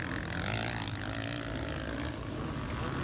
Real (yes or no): yes